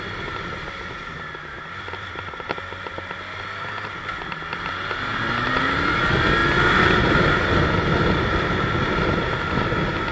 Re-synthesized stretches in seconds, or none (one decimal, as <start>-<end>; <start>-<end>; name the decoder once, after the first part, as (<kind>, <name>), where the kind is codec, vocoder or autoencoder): none